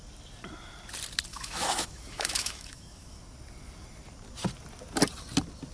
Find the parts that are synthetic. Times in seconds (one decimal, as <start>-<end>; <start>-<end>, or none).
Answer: 1.3-3.2